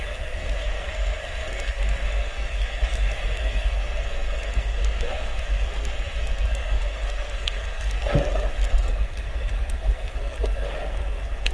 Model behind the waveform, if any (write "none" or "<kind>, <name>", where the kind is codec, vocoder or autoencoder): codec, SNAC